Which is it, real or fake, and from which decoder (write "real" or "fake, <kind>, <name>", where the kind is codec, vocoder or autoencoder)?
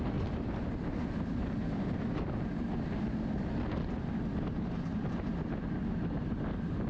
real